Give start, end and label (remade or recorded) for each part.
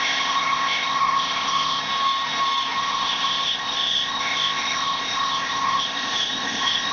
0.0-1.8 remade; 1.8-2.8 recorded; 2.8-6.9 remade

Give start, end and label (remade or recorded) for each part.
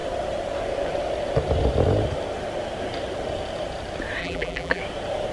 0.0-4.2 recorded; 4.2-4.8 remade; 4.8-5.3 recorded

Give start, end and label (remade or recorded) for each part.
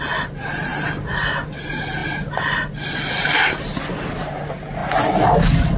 0.0-5.8 recorded